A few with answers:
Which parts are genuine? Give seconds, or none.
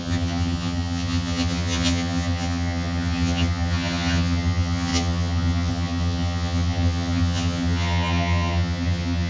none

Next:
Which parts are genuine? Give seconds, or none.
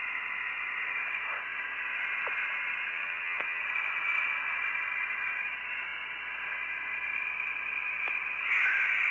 0.0-2.9; 3.6-9.1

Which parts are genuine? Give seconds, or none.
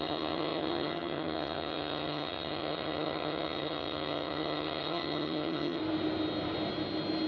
5.8-7.3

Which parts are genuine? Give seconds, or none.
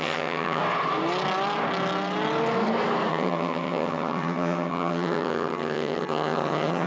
0.6-3.1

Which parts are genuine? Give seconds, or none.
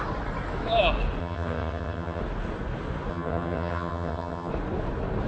0.0-1.2; 2.2-3.1; 4.5-5.3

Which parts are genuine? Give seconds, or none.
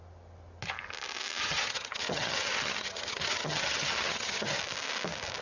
0.0-1.4; 4.6-5.4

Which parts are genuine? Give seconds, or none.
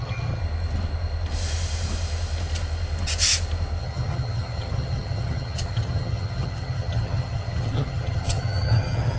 0.4-3.8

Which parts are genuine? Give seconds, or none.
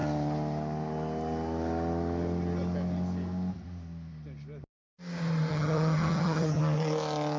0.0-5.5; 6.6-7.4